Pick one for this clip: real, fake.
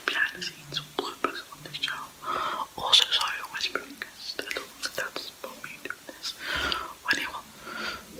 fake